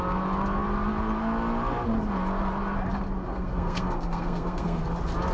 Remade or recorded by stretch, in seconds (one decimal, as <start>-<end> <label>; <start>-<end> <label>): 0.0-3.3 recorded; 3.3-4.8 remade; 4.8-5.3 recorded